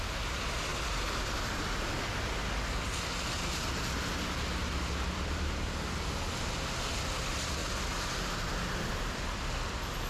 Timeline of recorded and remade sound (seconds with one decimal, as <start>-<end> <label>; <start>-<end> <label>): 0.0-0.7 recorded; 0.7-1.6 remade; 1.6-4.6 recorded; 4.6-6.5 remade; 6.5-10.1 recorded